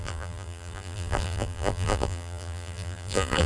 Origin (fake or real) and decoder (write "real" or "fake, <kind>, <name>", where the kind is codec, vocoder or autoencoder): fake, vocoder, BigVGAN v2